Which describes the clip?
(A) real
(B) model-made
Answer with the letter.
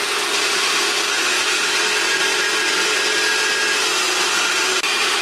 A